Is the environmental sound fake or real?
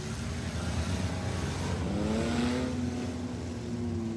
real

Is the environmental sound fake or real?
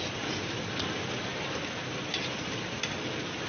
real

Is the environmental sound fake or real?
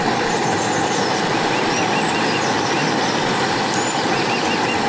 real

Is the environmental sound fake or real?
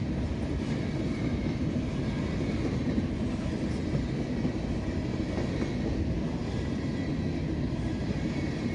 real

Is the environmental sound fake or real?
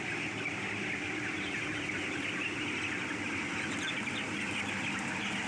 real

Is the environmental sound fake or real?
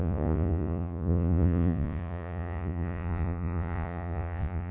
fake